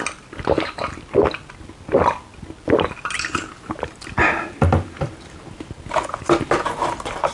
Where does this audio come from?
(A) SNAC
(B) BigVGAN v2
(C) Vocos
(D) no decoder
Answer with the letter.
D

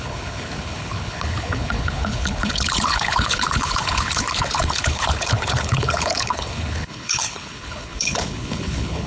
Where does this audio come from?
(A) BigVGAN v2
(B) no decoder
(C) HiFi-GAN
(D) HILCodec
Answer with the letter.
D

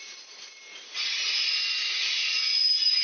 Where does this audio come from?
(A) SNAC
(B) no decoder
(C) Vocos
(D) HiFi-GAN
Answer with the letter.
B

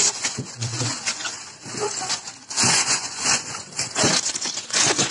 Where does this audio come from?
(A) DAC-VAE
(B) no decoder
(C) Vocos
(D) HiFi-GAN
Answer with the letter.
C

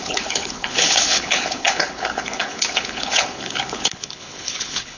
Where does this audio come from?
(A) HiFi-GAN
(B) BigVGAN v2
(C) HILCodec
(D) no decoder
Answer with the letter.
C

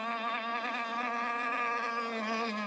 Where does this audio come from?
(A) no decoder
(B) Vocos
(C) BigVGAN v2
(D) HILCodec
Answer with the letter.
A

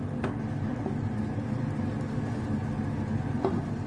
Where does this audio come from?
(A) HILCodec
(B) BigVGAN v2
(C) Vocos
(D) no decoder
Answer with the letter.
D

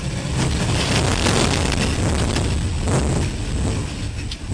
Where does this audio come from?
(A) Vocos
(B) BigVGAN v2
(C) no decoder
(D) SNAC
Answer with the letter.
C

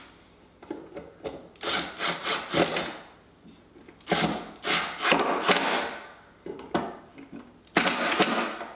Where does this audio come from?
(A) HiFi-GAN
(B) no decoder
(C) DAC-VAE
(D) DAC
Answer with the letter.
B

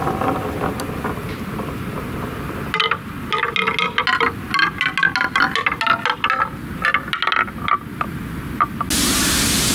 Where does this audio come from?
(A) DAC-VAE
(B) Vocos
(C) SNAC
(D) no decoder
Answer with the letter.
D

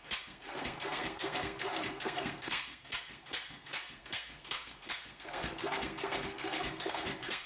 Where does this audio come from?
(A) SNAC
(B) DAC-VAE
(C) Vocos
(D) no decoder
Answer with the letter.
A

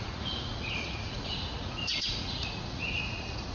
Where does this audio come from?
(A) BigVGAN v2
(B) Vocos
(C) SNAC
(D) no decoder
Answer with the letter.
B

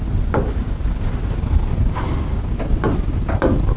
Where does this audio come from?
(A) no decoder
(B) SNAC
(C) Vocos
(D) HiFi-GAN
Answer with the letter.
A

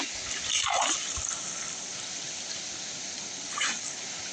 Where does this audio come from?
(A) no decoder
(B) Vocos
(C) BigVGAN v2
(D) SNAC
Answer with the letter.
A